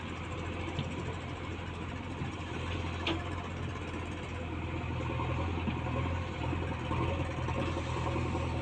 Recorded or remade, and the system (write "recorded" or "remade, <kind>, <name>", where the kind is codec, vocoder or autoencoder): recorded